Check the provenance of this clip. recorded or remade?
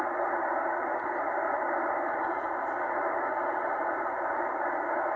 recorded